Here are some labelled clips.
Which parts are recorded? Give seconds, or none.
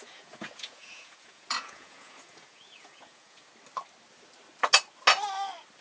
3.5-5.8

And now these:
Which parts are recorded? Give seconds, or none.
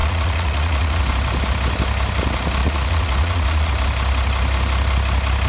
1.0-2.6; 3.7-5.5